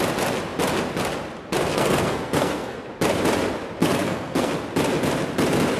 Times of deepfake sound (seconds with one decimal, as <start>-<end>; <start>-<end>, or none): 1.7-2.9; 3.8-4.5